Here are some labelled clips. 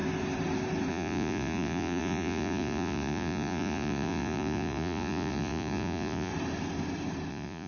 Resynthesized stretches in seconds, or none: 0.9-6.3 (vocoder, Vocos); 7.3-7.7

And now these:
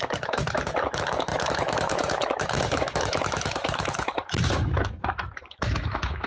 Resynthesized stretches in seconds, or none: 0.0-6.3 (autoencoder, DAC-VAE)

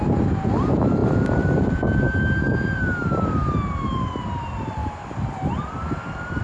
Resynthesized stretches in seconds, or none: 1.0-1.6 (vocoder, BigVGAN v2); 4.8-6.4

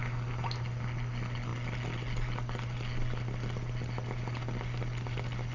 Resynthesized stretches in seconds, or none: none

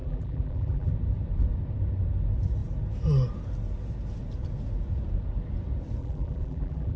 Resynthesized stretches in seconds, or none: 0.0-0.9 (vocoder, BigVGAN v2); 6.0-7.0

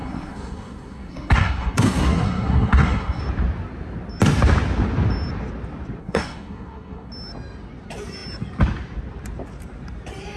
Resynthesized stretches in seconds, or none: 0.0-3.2 (codec, SNAC); 6.0-7.1